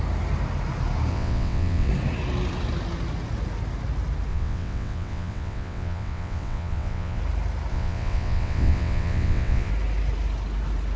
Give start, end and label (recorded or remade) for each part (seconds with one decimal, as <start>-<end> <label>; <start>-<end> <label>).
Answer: 0.0-1.1 recorded; 1.1-1.9 remade; 1.9-4.3 recorded; 4.3-7.2 remade; 7.2-7.7 recorded; 7.7-9.7 remade; 9.7-11.0 recorded